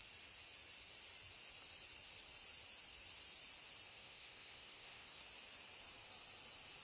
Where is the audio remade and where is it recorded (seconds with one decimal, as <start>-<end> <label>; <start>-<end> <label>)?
0.0-3.9 recorded; 3.9-5.2 remade; 5.2-6.8 recorded